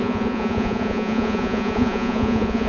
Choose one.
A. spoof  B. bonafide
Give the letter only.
A